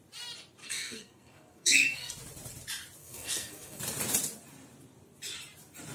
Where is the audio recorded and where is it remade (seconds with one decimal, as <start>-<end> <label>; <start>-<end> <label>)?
0.0-0.6 recorded; 0.6-2.1 remade; 2.1-3.0 recorded; 3.0-3.8 remade; 3.8-5.9 recorded